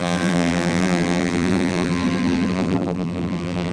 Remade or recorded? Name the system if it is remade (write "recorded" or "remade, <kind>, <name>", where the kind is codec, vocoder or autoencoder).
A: remade, vocoder, BigVGAN v2